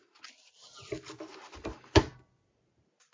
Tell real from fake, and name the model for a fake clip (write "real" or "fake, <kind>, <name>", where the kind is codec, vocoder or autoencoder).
real